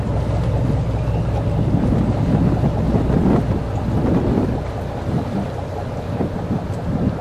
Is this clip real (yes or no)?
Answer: yes